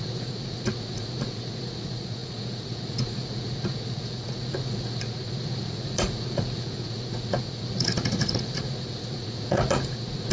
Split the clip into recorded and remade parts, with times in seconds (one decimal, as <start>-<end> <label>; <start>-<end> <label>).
0.0-10.3 remade